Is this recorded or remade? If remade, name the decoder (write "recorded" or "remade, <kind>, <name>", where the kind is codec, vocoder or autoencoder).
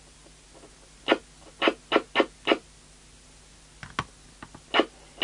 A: recorded